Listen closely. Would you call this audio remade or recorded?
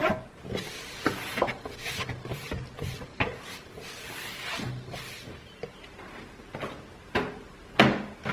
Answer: recorded